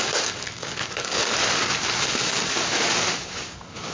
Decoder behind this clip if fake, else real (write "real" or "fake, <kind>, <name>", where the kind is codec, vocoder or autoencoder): fake, codec, DAC